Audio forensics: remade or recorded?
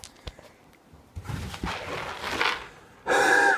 recorded